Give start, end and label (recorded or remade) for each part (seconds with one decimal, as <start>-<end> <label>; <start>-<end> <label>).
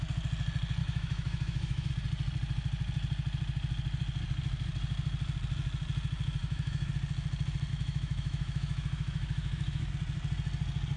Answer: 0.0-0.8 recorded; 0.8-1.9 remade; 1.9-6.4 recorded; 6.4-6.9 remade; 6.9-7.7 recorded; 7.7-9.9 remade; 9.9-11.0 recorded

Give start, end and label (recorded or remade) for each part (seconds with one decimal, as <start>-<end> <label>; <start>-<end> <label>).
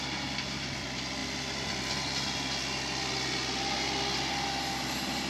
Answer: 0.0-5.3 recorded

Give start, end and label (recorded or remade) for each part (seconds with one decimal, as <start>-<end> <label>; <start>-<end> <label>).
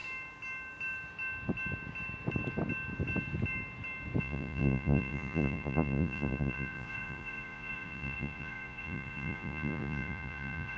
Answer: 0.0-4.2 recorded; 4.2-10.8 remade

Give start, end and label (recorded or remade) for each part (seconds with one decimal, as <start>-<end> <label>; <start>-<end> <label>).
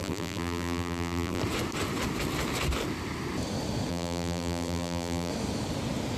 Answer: 0.0-1.4 remade; 1.4-3.9 recorded; 3.9-5.3 remade; 5.3-6.2 recorded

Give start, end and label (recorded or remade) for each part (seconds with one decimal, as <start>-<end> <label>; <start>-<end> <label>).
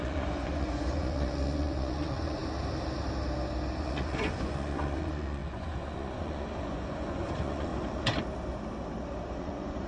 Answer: 0.0-2.4 remade; 2.4-3.8 recorded; 3.8-7.7 remade; 7.7-9.4 recorded; 9.4-9.9 remade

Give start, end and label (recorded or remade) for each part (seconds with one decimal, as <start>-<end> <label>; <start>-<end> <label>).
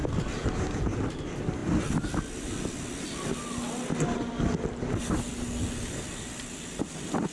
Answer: 0.0-1.0 remade; 1.0-7.3 recorded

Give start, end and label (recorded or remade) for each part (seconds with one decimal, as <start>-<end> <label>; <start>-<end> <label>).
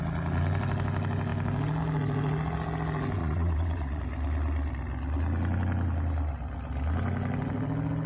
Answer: 0.0-3.2 recorded; 3.2-4.0 remade; 4.0-8.1 recorded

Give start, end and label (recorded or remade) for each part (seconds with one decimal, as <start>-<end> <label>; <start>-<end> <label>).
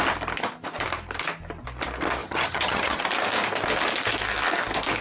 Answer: 0.0-2.2 recorded; 2.2-3.0 remade; 3.0-5.0 recorded